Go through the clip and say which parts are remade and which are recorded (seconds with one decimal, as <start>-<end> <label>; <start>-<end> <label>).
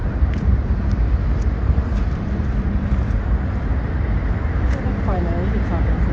0.0-1.1 remade; 1.1-1.6 recorded; 1.6-5.2 remade; 5.2-6.1 recorded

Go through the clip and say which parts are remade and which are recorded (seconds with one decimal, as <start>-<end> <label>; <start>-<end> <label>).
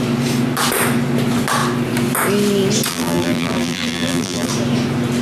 0.0-2.9 recorded; 2.9-4.5 remade; 4.5-5.2 recorded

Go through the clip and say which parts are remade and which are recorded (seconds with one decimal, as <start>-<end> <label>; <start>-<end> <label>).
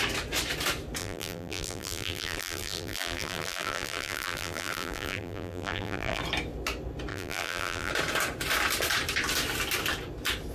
0.0-1.0 recorded; 1.0-6.2 remade; 6.2-7.1 recorded; 7.1-7.9 remade; 7.9-10.5 recorded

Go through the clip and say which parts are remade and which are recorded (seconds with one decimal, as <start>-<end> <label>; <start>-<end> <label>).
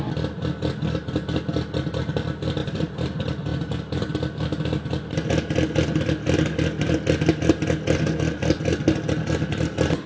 0.0-2.6 recorded; 2.6-3.1 remade; 3.1-10.1 recorded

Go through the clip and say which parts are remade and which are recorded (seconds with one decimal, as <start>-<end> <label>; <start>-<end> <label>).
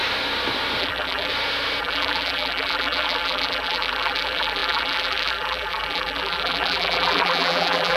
0.0-0.8 recorded; 0.8-1.3 remade; 1.3-1.8 recorded; 1.8-8.0 remade